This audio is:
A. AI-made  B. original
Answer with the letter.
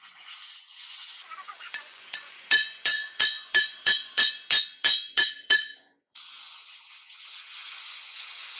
A